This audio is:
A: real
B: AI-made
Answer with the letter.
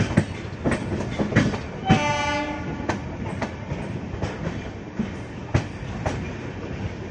A